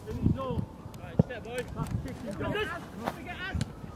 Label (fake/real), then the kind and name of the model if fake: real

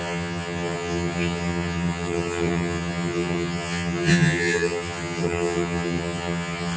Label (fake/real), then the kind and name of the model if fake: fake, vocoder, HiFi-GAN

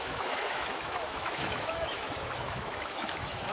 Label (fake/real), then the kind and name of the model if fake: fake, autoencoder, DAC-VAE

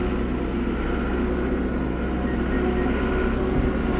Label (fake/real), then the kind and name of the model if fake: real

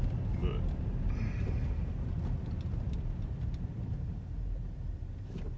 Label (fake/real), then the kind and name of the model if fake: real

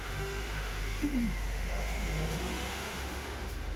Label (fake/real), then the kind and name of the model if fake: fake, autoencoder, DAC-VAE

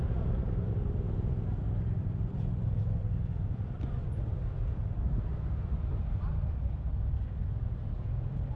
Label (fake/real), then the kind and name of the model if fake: fake, vocoder, BigVGAN v2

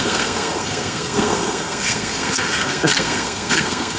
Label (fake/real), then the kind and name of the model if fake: fake, codec, SNAC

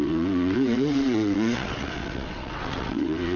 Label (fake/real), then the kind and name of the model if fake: fake, vocoder, WaveNeXt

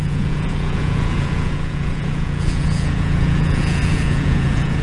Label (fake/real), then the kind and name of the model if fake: fake, vocoder, Vocos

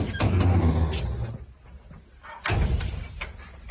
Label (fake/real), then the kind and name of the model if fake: real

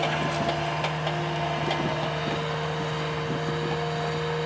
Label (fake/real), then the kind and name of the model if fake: real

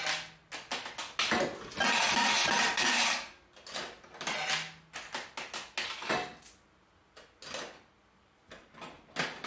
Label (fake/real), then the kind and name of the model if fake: real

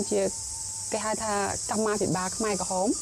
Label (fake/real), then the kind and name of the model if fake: real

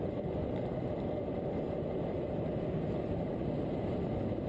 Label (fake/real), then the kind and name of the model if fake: real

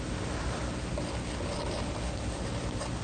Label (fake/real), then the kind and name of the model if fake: real